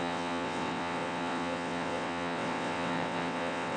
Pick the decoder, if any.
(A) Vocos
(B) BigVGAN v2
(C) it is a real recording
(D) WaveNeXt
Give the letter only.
D